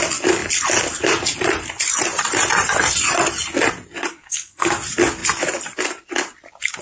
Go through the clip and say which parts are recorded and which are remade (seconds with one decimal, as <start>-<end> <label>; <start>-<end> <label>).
0.0-4.1 recorded; 4.1-4.7 remade; 4.7-6.8 recorded